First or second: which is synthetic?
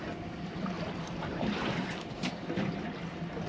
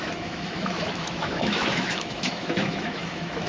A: second